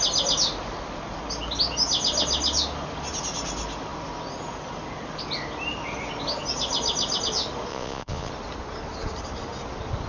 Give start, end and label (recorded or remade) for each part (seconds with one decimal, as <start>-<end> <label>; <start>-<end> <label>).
0.0-7.7 recorded; 7.7-8.3 remade; 8.3-10.1 recorded